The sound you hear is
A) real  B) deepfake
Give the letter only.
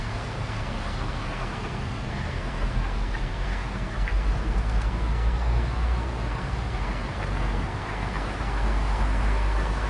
B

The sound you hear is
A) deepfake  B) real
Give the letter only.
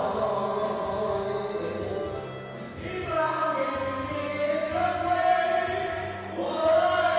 B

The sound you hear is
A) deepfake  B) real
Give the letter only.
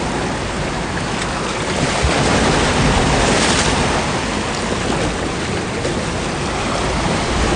B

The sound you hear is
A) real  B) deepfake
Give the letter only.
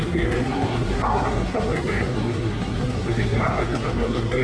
B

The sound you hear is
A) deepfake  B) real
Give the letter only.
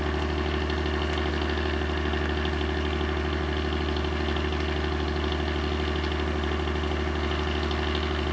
B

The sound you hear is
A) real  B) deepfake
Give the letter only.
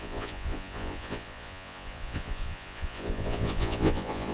B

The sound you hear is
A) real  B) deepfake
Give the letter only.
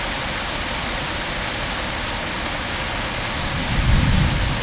A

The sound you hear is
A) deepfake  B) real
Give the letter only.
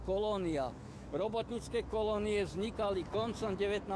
A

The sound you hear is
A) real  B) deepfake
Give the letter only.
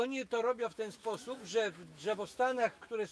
B